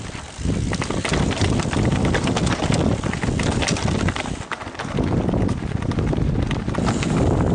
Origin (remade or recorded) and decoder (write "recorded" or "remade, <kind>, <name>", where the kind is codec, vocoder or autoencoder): recorded